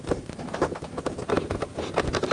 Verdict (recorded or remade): recorded